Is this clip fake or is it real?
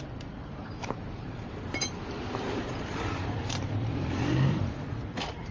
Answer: fake